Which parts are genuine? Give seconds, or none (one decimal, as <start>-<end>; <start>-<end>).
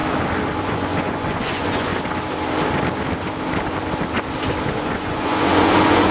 0.0-0.6; 1.9-4.7